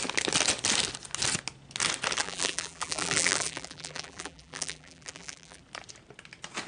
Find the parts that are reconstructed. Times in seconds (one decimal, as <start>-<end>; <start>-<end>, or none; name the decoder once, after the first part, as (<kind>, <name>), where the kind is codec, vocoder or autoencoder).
2.2-5.6 (vocoder, BigVGAN v2)